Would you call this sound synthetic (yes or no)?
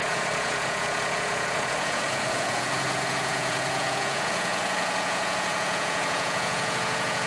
yes